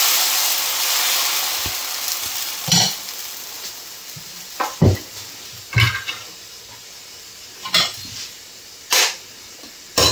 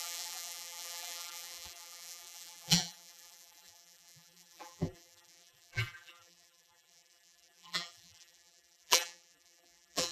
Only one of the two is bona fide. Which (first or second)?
first